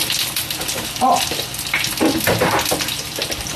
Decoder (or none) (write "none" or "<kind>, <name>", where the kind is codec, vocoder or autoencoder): none